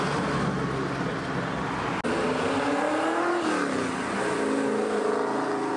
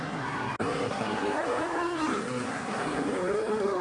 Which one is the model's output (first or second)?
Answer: second